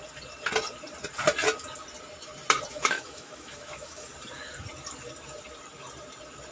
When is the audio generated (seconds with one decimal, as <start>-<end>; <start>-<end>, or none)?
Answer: 2.7-4.1